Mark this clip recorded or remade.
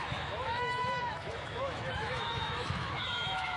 remade